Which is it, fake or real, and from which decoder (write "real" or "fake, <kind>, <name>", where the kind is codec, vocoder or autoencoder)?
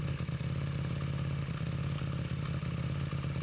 real